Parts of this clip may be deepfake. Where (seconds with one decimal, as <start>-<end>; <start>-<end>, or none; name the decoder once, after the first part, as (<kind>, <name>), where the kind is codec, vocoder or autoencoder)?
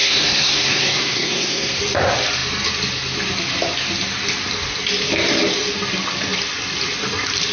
0.0-1.8 (codec, SNAC)